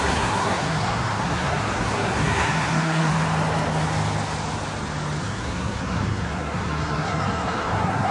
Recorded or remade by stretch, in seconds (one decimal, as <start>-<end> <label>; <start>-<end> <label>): 0.0-3.1 remade; 3.1-5.2 recorded; 5.2-8.1 remade